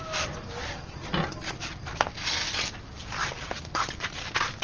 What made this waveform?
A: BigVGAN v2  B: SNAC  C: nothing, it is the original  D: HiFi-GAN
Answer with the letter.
C